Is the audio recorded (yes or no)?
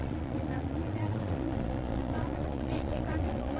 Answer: no